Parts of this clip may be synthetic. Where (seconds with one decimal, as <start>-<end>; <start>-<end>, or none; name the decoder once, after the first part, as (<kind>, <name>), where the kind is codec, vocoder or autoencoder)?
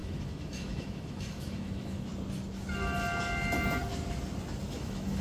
0.0-2.1 (autoencoder, DAC-VAE); 4.7-5.2